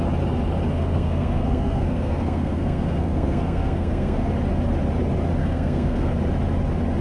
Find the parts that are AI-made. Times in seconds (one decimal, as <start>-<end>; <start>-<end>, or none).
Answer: 0.7-4.3; 5.4-6.1

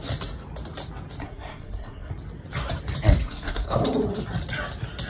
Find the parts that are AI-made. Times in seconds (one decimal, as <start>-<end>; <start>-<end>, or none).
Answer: 1.2-2.1; 3.2-3.8

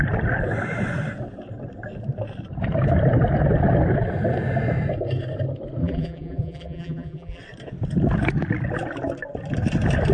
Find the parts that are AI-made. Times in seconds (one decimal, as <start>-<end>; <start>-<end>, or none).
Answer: 5.8-7.4

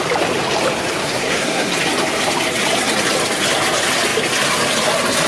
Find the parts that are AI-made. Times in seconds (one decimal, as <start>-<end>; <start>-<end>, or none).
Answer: 1.0-1.7

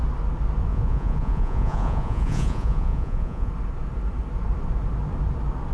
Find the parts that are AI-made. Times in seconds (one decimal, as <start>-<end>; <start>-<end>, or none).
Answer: 0.7-3.5